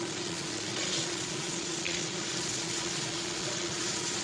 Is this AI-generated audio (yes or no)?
yes